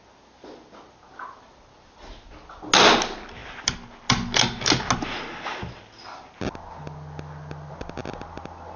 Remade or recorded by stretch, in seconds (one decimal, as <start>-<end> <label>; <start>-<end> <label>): 0.0-8.8 recorded